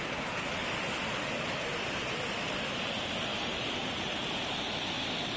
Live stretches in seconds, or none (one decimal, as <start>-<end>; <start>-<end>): 0.0-0.6; 1.1-3.3; 4.2-5.4